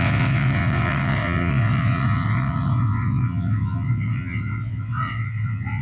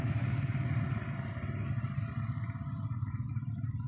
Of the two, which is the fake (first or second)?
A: first